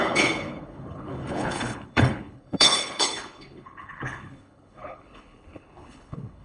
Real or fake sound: fake